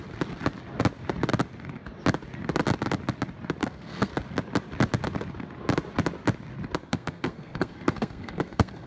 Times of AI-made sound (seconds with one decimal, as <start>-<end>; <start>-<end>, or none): 3.6-4.1; 6.8-8.9